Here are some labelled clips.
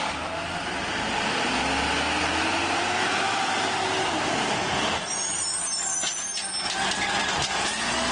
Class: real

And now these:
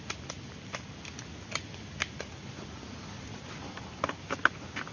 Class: real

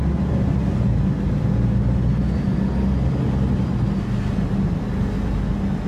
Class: real